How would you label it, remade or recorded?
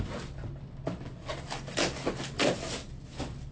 recorded